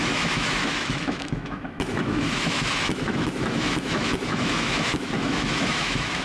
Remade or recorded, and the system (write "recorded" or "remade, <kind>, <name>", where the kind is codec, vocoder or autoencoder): remade, autoencoder, DAC-VAE